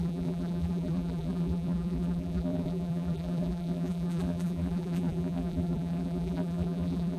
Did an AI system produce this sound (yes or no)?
yes